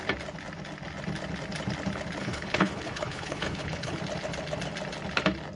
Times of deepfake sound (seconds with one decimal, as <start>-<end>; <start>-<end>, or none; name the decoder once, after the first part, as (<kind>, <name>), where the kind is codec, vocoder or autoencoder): 2.2-4.0 (codec, HILCodec)